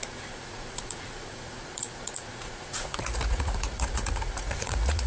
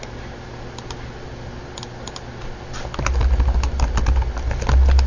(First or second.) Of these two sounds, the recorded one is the second